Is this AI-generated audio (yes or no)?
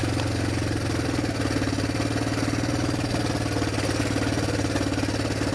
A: no